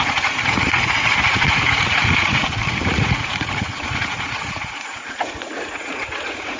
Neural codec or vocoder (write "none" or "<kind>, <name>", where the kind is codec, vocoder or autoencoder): vocoder, Vocos